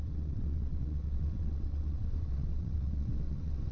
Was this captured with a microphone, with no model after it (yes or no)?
no